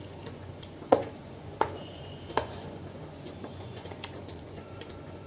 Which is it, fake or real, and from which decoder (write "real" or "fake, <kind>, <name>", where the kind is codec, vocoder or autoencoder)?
fake, vocoder, Vocos